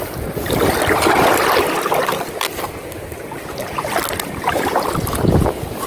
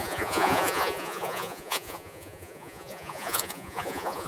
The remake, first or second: second